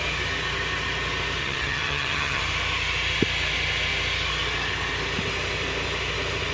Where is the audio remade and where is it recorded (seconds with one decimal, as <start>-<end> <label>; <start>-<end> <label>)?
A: 0.0-1.4 recorded; 1.4-2.4 remade; 2.4-6.5 recorded